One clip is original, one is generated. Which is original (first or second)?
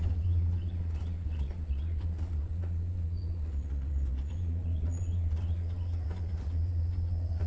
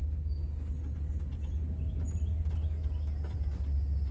second